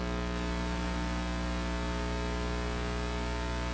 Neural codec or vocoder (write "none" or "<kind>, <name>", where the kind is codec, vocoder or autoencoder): none